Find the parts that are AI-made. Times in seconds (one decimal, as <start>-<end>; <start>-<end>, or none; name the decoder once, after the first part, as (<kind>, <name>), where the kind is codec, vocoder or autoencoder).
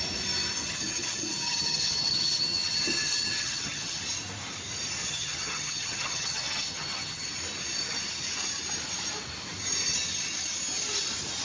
0.6-4.0 (vocoder, HiFi-GAN); 5.0-7.3